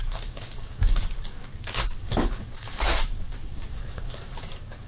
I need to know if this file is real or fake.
fake